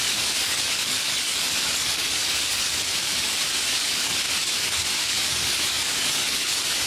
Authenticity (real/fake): fake